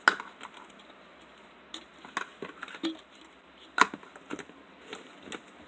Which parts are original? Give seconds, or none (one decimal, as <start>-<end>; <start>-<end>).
0.0-5.7